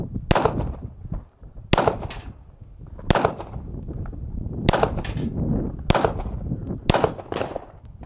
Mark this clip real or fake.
real